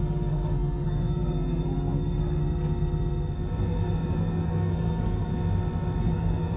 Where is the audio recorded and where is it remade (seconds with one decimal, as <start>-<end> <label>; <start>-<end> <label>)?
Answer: 0.0-2.4 remade; 2.4-3.6 recorded; 3.6-5.3 remade; 5.3-6.0 recorded; 6.0-6.6 remade